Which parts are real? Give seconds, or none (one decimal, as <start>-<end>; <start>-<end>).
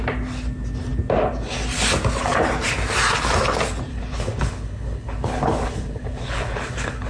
0.0-3.9